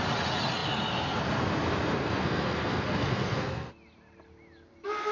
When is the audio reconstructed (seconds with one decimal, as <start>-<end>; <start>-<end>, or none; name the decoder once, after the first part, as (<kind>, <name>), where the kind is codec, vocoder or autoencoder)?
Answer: 2.0-3.7 (codec, SNAC)